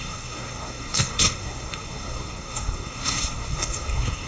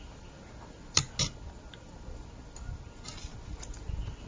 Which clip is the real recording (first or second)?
second